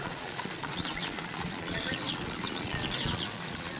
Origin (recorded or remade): remade